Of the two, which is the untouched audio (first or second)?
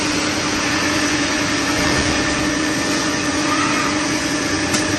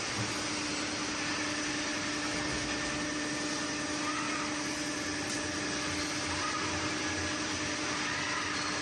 second